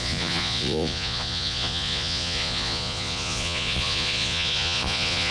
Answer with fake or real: fake